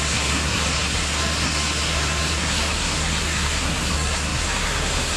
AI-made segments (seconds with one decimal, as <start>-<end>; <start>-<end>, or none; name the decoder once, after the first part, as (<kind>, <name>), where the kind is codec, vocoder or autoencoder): 0.0-5.2 (codec, SNAC)